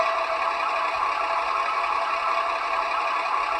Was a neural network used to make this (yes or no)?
no